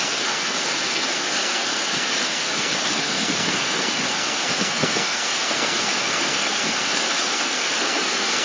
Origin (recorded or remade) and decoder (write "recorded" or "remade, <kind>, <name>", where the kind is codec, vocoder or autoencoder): remade, codec, SNAC